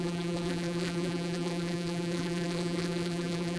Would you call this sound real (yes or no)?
no